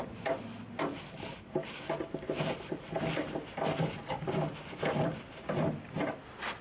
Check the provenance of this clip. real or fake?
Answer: real